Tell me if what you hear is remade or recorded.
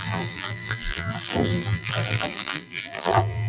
remade